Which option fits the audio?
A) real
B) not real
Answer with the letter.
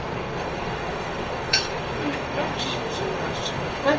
B